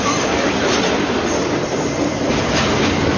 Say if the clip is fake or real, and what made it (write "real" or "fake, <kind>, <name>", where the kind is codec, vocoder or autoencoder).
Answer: real